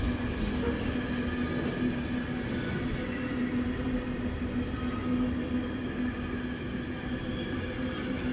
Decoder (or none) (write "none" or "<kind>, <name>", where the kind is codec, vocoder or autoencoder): none